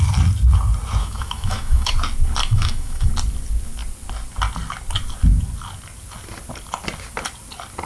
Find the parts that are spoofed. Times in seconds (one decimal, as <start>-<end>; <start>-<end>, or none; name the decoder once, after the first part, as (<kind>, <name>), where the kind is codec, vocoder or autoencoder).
1.0-1.9 (autoencoder, DAC-VAE); 2.4-3.1